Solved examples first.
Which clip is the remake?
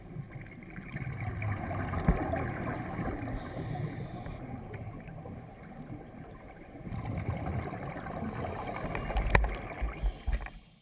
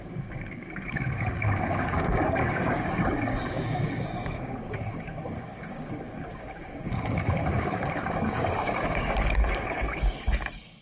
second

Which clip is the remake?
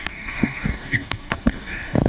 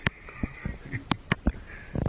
first